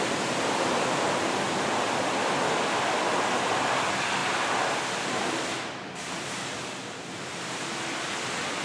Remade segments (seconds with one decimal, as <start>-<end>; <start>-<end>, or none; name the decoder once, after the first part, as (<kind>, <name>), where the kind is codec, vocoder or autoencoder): none